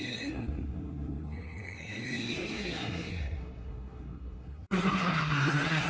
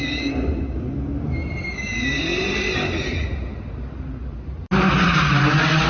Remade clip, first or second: first